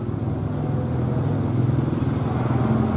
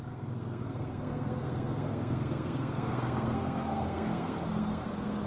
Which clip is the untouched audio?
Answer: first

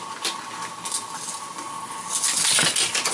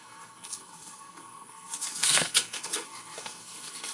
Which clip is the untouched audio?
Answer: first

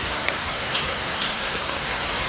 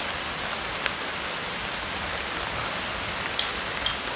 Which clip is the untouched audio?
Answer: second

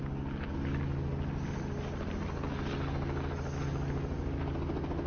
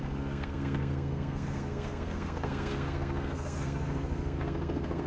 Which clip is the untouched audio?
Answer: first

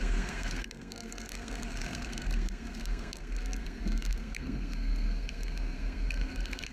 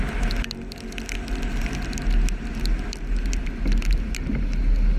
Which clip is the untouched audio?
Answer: second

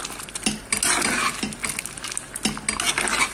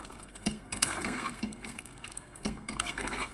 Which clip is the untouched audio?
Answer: first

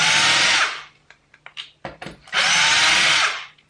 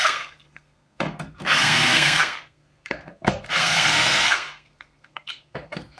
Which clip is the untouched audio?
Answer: first